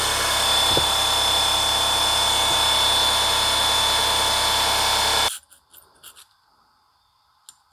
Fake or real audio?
real